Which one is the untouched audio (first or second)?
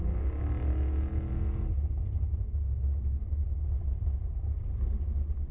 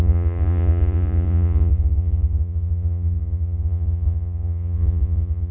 first